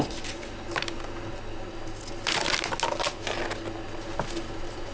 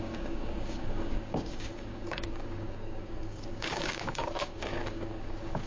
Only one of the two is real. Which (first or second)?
first